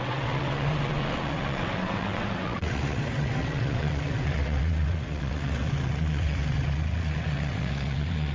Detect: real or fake fake